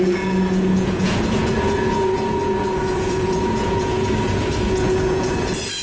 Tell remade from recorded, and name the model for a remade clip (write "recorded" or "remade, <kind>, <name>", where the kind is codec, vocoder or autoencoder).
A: remade, vocoder, Vocos